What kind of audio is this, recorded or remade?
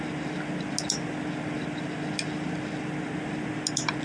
recorded